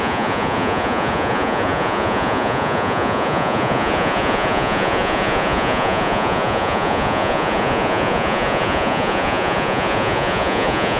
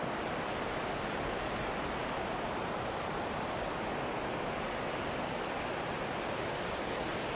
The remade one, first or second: first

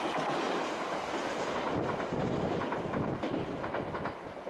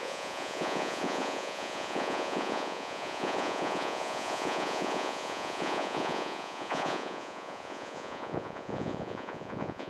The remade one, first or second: second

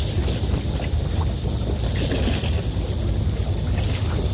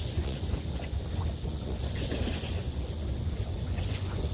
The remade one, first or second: second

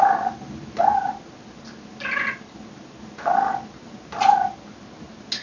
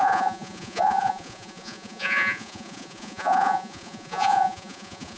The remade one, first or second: second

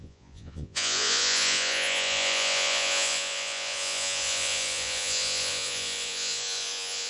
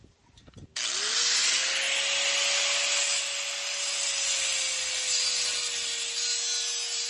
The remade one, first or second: first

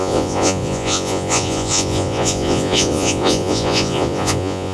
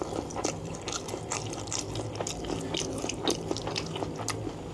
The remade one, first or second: first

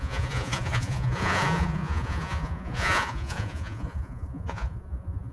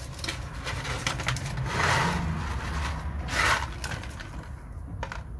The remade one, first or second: first